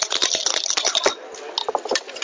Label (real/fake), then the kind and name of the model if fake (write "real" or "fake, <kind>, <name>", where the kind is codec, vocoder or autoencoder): real